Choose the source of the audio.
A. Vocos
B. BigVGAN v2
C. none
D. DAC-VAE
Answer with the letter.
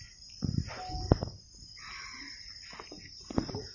C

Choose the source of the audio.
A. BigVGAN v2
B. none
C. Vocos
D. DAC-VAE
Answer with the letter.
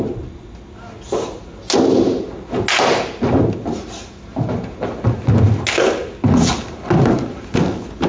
B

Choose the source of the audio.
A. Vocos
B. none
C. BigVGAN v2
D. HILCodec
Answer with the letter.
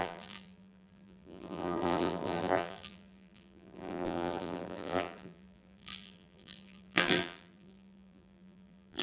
C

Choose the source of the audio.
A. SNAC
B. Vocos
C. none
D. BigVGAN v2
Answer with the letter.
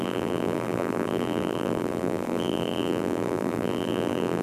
D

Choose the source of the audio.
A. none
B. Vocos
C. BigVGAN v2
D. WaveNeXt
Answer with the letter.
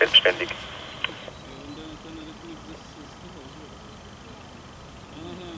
A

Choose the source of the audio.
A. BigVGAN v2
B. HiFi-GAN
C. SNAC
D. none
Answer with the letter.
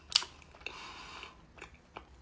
D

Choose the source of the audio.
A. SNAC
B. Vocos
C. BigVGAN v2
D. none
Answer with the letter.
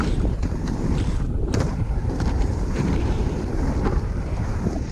C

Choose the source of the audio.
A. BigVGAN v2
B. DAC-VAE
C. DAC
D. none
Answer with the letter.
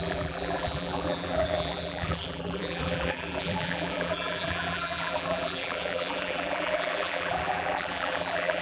A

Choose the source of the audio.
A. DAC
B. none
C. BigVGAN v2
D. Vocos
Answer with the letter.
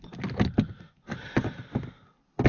B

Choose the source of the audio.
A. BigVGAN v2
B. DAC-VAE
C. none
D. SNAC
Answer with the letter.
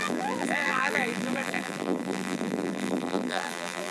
A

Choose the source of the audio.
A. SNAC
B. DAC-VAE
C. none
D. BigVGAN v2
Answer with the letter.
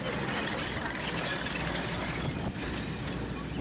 C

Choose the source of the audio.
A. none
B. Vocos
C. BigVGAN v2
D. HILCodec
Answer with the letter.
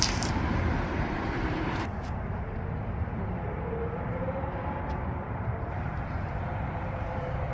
C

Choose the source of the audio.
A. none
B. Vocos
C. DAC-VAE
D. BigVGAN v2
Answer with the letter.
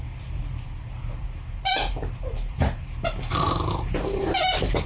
D